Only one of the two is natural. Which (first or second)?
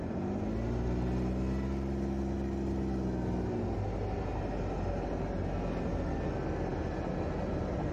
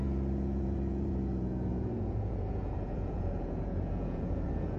first